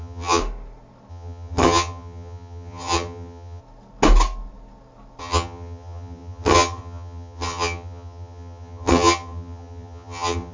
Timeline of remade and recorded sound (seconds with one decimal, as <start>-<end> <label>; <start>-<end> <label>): 0.0-0.4 remade; 0.4-1.1 recorded; 1.1-3.6 remade; 3.6-5.2 recorded; 5.2-10.5 remade